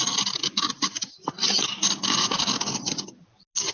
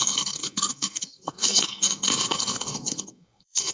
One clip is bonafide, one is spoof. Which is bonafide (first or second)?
first